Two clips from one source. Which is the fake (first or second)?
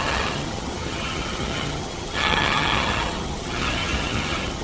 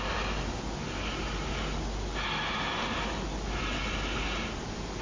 first